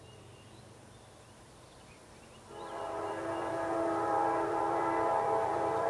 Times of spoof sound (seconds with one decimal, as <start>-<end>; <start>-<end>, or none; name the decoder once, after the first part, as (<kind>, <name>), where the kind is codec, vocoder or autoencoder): 0.0-5.9 (vocoder, BigVGAN v2)

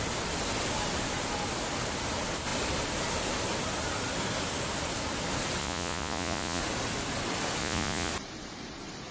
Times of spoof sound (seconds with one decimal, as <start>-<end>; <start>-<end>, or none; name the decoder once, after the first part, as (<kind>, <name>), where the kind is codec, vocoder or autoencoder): 5.6-6.6 (vocoder, Vocos); 7.6-8.1

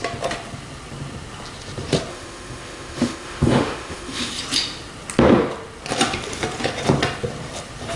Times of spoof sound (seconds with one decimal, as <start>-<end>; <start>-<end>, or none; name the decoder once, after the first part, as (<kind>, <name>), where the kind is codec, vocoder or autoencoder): 2.1-4.3 (autoencoder, DAC-VAE)

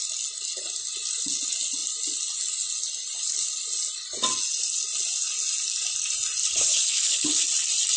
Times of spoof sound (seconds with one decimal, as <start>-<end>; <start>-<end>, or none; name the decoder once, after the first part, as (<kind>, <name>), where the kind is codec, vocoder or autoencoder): 6.4-7.4 (codec, HILCodec)

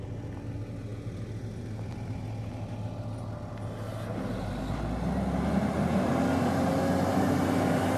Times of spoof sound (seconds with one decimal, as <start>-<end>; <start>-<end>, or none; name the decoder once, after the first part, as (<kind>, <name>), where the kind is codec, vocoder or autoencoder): none

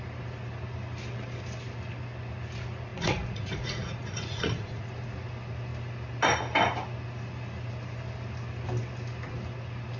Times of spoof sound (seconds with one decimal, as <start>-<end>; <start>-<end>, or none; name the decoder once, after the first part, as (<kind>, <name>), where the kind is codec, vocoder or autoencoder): 2.9-4.9 (vocoder, Vocos)

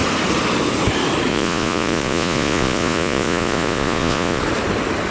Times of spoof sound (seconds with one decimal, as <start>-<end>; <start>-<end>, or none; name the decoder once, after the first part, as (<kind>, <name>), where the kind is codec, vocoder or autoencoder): 1.3-4.4 (vocoder, Vocos)

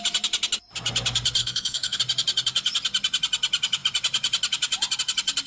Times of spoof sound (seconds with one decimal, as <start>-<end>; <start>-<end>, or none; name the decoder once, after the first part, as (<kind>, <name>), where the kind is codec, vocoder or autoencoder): 1.4-2.0 (codec, SNAC)